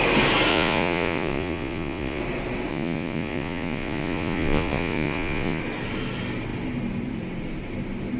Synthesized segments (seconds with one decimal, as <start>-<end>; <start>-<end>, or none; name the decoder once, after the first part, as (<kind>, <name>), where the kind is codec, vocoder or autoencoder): 0.5-2.2 (vocoder, Vocos); 2.7-5.6